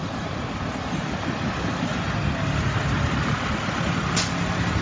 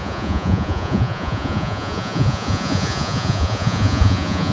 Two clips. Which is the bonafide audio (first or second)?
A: first